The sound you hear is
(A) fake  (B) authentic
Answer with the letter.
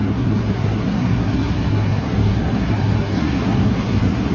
A